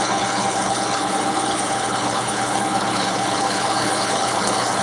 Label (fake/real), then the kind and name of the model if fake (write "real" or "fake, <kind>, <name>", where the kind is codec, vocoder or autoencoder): fake, codec, HILCodec